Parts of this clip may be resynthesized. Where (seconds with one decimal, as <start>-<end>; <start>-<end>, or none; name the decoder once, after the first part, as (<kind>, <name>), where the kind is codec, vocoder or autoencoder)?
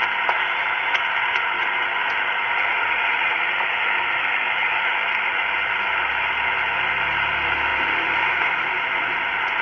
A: 2.7-3.4 (vocoder, Vocos)